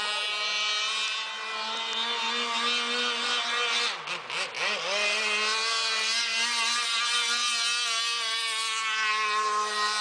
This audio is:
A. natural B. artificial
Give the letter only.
A